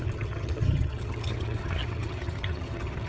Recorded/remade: remade